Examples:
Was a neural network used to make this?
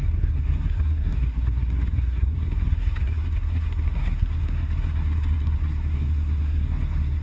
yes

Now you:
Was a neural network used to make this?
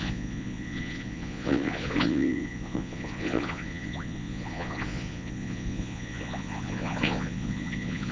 yes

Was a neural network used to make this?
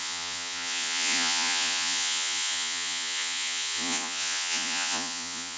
yes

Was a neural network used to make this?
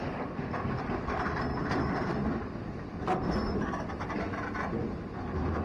no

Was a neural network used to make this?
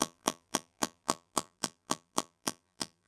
yes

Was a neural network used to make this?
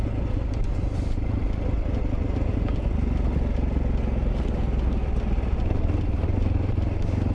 no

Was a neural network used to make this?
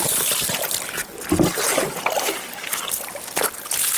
no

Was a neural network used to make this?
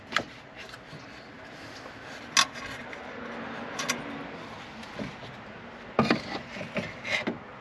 no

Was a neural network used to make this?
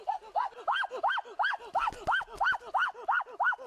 no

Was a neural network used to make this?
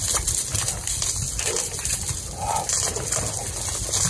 no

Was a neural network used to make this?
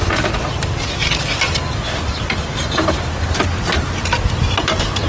no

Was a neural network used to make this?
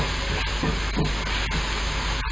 no